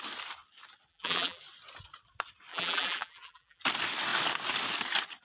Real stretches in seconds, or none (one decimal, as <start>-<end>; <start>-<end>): 0.0-0.9; 1.4-2.5; 3.6-5.2